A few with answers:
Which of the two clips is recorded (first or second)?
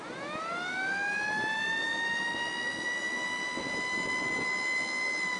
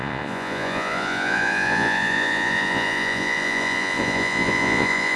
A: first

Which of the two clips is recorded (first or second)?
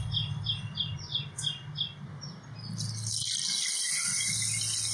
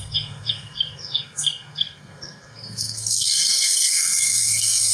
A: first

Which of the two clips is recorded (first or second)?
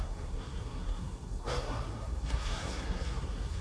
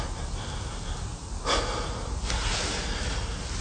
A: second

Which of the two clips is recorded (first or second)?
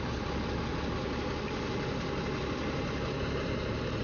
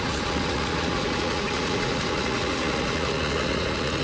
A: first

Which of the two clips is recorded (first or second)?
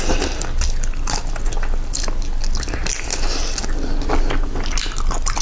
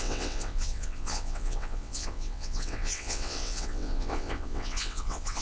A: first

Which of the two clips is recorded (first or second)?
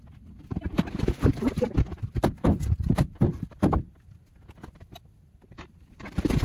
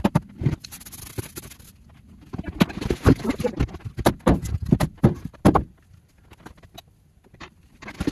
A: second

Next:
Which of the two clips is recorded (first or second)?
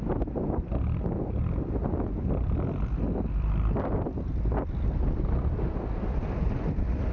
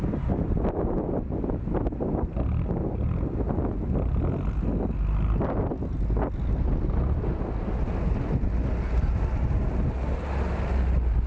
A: second